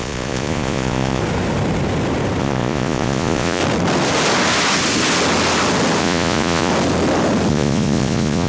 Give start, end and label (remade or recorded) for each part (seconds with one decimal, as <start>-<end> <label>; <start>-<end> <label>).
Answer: 0.0-1.2 remade; 1.2-2.4 recorded; 2.4-3.6 remade; 3.6-6.0 recorded; 6.0-6.7 remade; 6.7-7.5 recorded; 7.5-8.5 remade